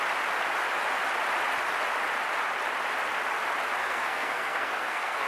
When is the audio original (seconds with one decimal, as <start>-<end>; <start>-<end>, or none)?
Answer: 0.0-3.8